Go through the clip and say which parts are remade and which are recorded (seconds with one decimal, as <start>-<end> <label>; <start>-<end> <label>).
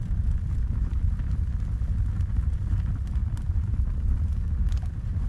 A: 0.0-5.3 recorded